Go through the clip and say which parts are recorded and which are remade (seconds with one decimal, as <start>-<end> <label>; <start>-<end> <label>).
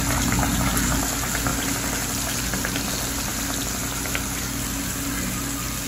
0.0-5.9 recorded